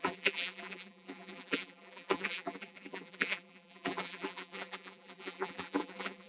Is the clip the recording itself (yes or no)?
no